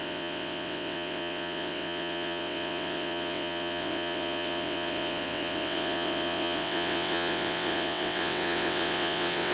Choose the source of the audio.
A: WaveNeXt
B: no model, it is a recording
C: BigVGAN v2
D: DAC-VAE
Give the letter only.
A